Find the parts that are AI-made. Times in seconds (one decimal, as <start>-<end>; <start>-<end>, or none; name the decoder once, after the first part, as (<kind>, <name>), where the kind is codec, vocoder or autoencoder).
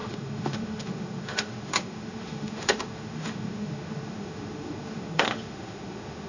0.0-6.3 (autoencoder, DAC-VAE)